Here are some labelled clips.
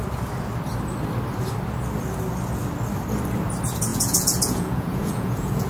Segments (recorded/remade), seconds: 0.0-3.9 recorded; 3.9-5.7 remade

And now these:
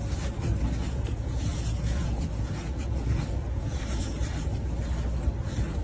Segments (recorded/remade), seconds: 0.0-0.8 recorded; 0.8-4.3 remade; 4.3-5.8 recorded

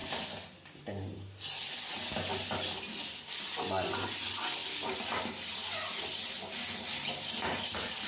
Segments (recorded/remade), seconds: 0.0-8.1 recorded